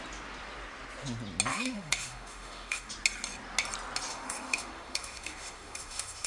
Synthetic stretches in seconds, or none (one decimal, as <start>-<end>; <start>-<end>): 1.5-2.9; 4.1-6.3